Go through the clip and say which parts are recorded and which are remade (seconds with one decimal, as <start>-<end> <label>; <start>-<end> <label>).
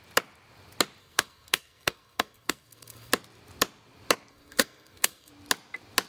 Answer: 0.0-1.0 recorded; 1.0-3.1 remade; 3.1-4.3 recorded; 4.3-5.3 remade; 5.3-6.1 recorded